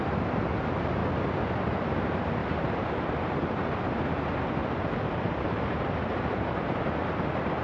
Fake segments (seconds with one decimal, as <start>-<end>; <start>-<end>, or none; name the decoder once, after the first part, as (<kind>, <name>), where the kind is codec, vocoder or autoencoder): 2.4-3.0 (vocoder, BigVGAN v2); 4.6-5.9